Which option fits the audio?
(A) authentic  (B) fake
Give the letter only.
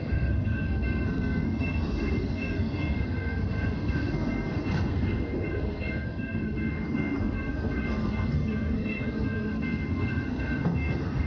B